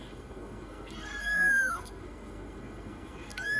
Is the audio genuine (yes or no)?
no